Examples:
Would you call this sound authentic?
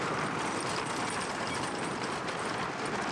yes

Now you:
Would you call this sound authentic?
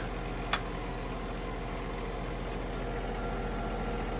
yes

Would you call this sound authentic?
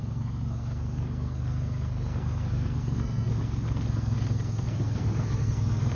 no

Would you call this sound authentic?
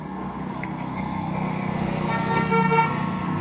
no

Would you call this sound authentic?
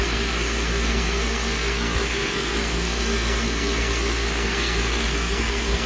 no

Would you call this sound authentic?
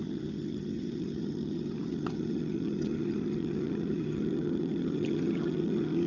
no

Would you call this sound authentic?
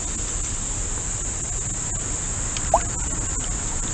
yes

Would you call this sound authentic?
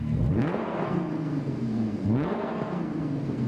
no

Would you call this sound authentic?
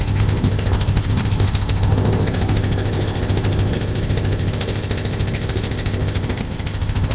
no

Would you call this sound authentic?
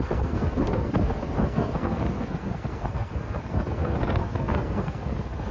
no